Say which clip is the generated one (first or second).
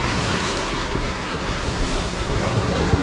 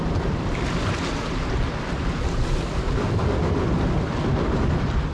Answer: first